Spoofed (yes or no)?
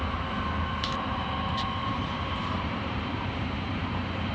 yes